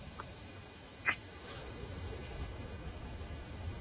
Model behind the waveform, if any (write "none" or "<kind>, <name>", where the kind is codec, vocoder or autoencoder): autoencoder, DAC-VAE